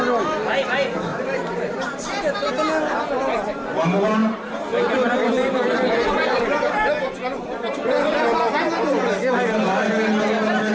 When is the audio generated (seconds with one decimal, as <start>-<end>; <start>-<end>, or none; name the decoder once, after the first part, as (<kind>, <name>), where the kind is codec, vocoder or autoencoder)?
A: 1.1-2.5 (vocoder, BigVGAN v2); 4.2-6.3